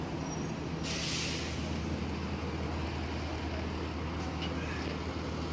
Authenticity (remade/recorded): recorded